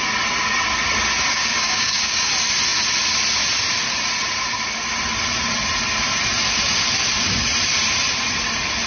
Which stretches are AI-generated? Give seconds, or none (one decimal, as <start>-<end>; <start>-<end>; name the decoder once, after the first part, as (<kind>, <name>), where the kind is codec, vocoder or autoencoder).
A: 1.3-2.3 (codec, DAC)